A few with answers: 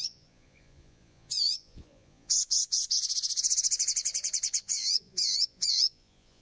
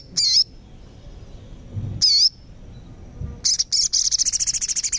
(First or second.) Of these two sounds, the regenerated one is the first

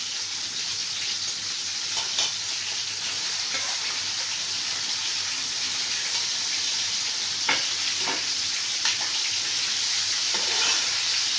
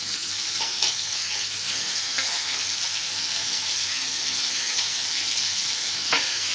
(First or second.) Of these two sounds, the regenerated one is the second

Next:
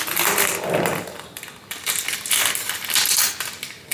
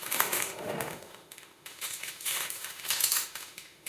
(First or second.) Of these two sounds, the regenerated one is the second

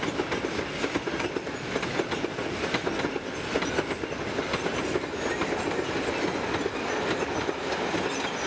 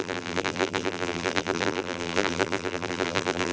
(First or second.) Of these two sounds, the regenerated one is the second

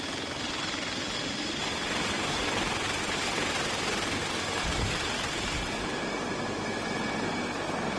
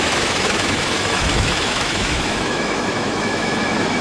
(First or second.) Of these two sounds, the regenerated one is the second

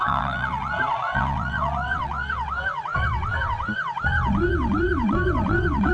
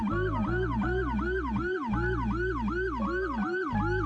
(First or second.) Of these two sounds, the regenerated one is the first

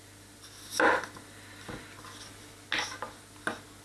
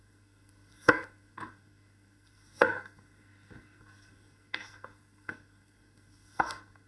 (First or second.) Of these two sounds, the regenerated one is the second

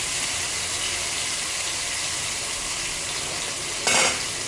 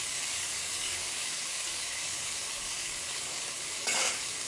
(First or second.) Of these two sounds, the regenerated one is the second